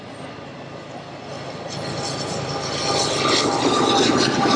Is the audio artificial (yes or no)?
no